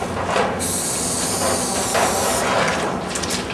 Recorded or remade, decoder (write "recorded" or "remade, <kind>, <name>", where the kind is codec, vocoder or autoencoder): recorded